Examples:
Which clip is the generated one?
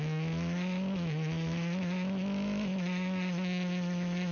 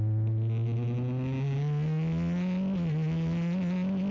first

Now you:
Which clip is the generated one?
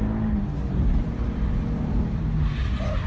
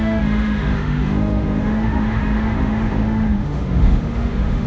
second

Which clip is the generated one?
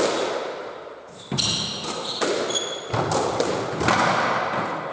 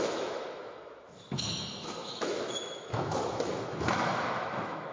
second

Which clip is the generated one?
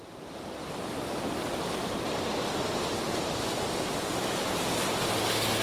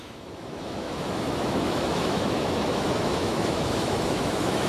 second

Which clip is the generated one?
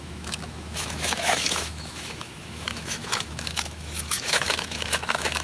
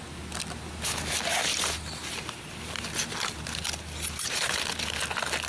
first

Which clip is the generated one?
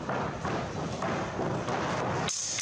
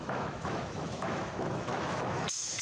second